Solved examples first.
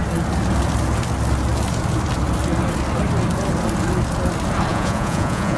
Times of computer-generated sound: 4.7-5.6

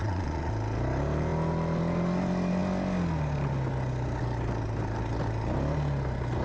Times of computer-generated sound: 0.0-0.5